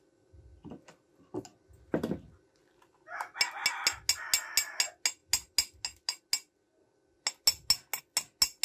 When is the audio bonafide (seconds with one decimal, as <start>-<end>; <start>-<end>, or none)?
0.0-8.6